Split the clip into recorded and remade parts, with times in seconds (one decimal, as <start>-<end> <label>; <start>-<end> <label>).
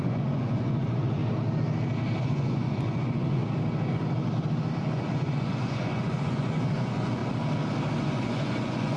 0.0-1.2 remade; 1.2-2.2 recorded; 2.2-3.4 remade; 3.4-4.8 recorded; 4.8-7.2 remade; 7.2-8.0 recorded; 8.0-9.0 remade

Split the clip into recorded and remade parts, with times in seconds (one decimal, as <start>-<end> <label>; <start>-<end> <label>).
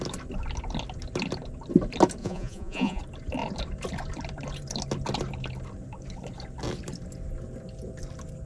0.0-2.2 recorded; 2.2-3.0 remade; 3.0-8.5 recorded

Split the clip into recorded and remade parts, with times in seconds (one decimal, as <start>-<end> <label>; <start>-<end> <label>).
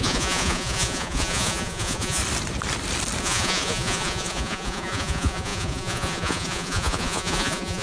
0.0-2.2 remade; 2.2-3.2 recorded; 3.2-7.8 remade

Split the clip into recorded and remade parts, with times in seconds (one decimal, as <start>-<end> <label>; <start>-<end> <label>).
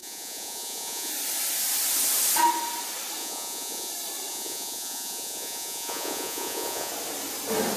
0.0-1.1 remade; 1.1-3.2 recorded; 3.2-3.9 remade; 3.9-4.3 recorded; 4.3-6.9 remade; 6.9-7.8 recorded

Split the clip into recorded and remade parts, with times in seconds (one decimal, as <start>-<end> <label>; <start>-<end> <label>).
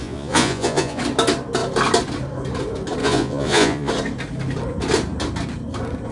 0.0-1.0 remade; 1.0-3.0 recorded; 3.0-3.9 remade; 3.9-6.1 recorded